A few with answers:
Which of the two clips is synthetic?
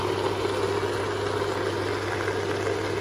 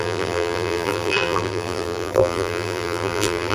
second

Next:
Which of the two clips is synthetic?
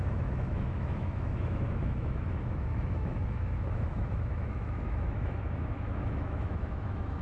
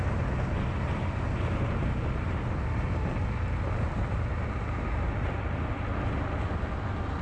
first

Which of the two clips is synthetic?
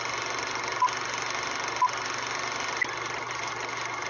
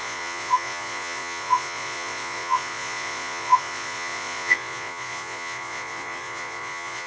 second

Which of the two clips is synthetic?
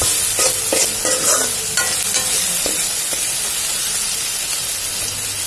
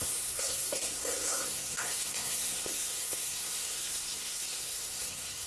second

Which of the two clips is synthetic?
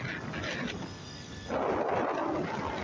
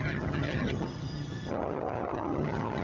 second